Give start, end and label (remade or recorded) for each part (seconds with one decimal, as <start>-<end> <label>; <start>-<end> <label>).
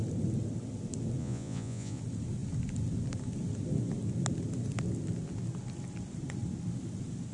0.0-1.2 recorded; 1.2-2.0 remade; 2.0-7.3 recorded